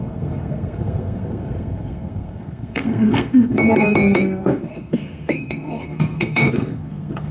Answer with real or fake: fake